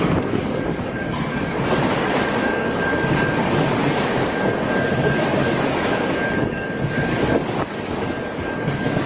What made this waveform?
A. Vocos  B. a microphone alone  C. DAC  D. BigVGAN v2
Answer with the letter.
C